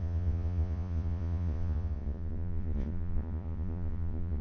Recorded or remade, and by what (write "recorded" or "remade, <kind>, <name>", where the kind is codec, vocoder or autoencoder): remade, vocoder, Vocos